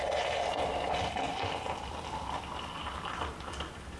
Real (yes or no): yes